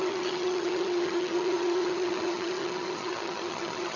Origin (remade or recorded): remade